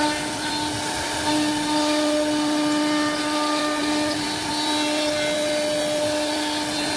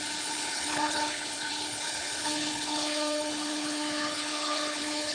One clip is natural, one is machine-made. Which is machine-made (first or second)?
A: second